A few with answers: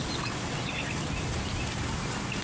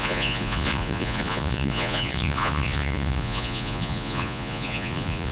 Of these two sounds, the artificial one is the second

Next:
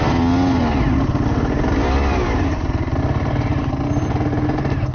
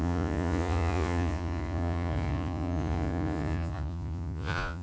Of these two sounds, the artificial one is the second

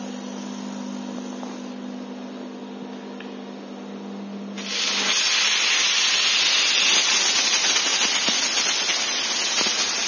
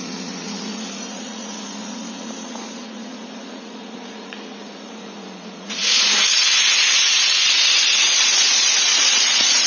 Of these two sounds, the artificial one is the second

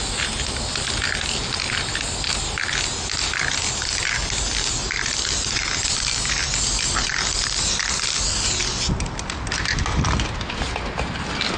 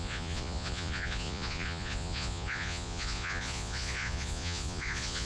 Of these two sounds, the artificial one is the second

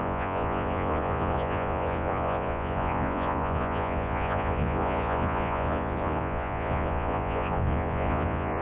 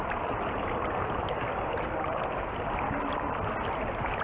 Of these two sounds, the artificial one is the first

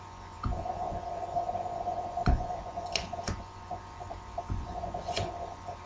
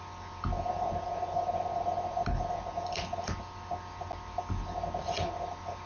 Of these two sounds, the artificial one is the first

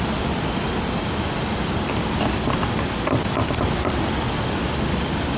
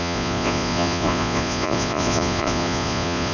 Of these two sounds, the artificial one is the second